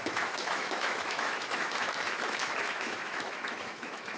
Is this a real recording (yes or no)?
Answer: no